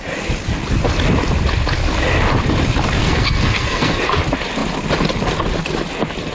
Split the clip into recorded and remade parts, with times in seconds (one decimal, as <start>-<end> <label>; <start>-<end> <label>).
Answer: 0.0-3.0 recorded; 3.0-4.0 remade; 4.0-6.3 recorded